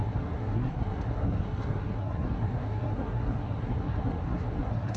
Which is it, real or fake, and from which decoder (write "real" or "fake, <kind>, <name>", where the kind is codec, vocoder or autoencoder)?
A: fake, codec, SNAC